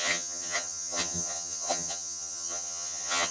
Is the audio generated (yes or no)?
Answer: yes